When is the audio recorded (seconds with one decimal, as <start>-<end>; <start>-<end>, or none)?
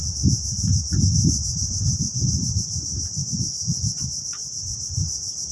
0.0-5.5